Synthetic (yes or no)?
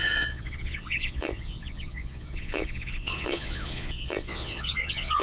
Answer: yes